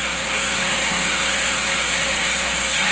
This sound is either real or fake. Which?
fake